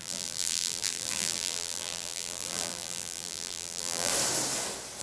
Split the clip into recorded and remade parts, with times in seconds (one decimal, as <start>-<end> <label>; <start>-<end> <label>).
0.0-4.1 remade; 4.1-5.0 recorded